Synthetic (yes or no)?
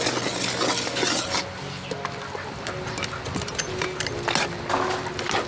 no